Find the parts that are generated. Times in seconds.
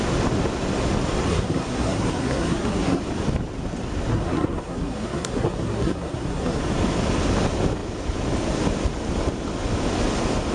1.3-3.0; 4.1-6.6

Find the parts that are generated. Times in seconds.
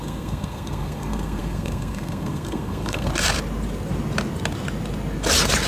0.0-3.1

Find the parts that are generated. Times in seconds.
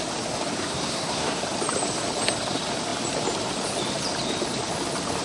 0.6-1.4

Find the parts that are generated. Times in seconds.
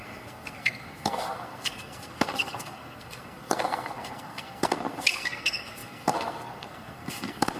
0.0-7.6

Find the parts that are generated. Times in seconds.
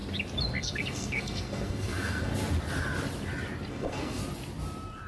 0.6-2.3; 3.7-4.2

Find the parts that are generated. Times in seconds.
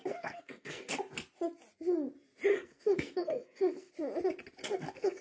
0.0-1.0; 2.5-3.9; 4.6-5.2